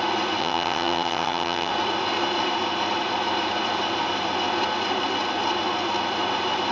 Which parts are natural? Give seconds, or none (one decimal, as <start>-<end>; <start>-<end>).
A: 0.0-0.4; 1.7-6.7